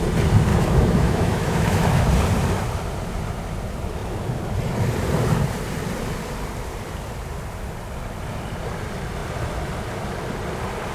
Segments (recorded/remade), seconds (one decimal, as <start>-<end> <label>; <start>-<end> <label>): 0.0-0.5 recorded; 0.5-2.1 remade; 2.1-10.9 recorded